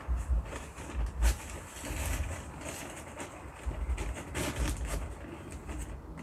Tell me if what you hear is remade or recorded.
recorded